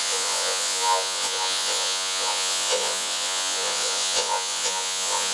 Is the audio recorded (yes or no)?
no